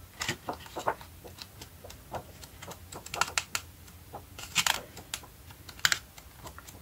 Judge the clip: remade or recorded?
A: recorded